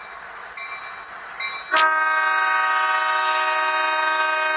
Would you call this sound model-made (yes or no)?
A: no